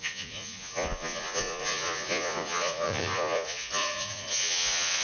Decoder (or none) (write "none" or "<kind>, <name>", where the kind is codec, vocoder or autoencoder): vocoder, Vocos